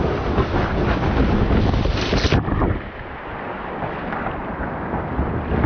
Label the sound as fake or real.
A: real